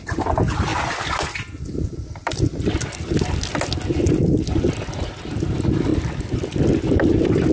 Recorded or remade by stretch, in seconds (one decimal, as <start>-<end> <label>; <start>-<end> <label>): 0.0-7.5 recorded

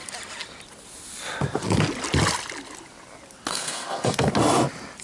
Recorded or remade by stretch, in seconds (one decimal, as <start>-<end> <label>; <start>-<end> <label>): 0.0-3.5 recorded; 3.5-4.3 remade; 4.3-5.0 recorded

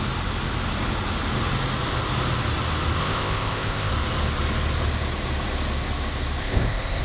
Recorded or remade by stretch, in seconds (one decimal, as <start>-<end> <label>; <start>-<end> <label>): 0.0-3.0 recorded; 3.0-3.9 remade; 3.9-6.4 recorded; 6.4-7.0 remade